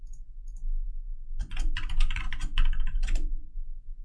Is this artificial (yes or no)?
yes